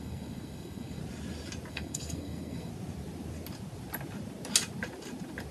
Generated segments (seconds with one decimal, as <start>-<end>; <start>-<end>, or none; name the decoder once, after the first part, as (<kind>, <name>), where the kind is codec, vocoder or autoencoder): 0.0-1.0 (codec, SNAC); 1.7-2.7